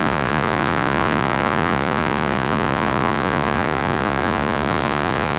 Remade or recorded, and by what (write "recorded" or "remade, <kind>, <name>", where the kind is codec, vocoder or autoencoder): remade, vocoder, Vocos